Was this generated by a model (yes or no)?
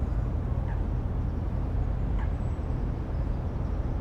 no